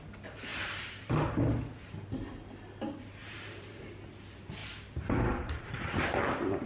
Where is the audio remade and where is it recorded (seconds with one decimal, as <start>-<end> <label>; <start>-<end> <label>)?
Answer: 0.0-0.5 recorded; 0.5-1.1 remade; 1.1-3.2 recorded; 3.2-3.8 remade; 3.8-4.6 recorded; 4.6-6.0 remade; 6.0-6.7 recorded